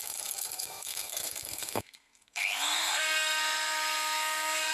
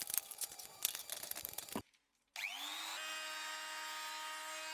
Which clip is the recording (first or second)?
second